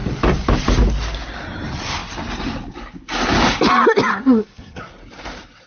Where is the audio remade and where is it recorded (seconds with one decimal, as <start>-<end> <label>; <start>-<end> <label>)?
0.0-4.1 recorded; 4.1-4.8 remade; 4.8-5.7 recorded

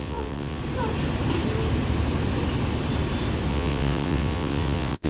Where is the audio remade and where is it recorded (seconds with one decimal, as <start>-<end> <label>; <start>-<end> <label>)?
0.0-0.6 remade; 0.6-3.5 recorded; 3.5-5.1 remade

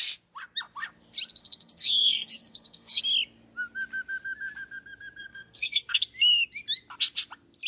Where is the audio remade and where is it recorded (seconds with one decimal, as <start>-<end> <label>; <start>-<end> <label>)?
0.0-1.4 recorded; 1.4-3.0 remade; 3.0-5.2 recorded; 5.2-6.0 remade; 6.0-7.7 recorded

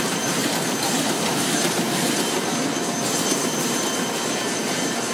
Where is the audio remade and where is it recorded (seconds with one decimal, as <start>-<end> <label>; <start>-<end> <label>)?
0.0-0.4 remade; 0.4-1.0 recorded; 1.0-2.5 remade; 2.5-4.3 recorded; 4.3-5.1 remade

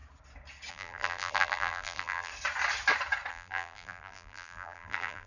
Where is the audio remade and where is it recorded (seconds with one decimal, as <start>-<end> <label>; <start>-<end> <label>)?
0.0-0.7 recorded; 0.7-2.3 remade; 2.3-3.3 recorded; 3.3-5.3 remade